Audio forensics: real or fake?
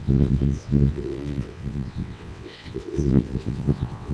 fake